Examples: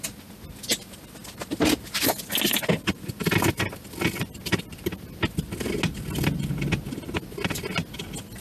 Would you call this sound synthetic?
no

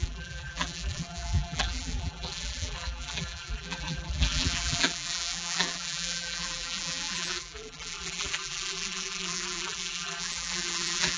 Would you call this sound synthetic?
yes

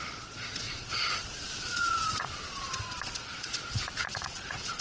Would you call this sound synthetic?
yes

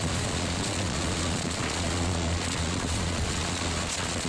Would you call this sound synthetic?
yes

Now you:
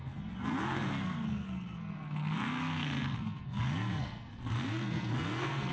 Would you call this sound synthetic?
yes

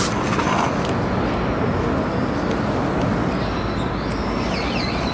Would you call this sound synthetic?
no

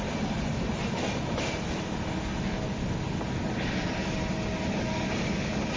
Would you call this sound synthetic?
no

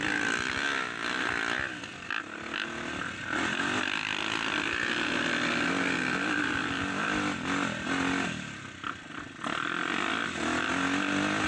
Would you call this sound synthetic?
no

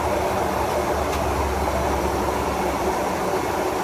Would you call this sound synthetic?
no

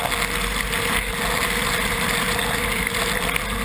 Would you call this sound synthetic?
no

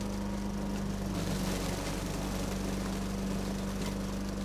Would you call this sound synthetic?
no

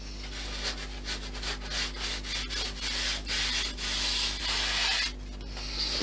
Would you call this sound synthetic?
no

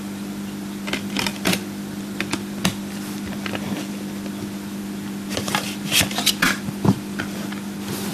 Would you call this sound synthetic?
yes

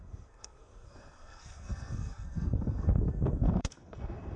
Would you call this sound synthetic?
yes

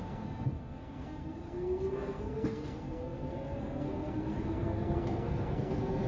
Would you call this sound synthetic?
yes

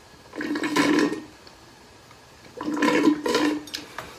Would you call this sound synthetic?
no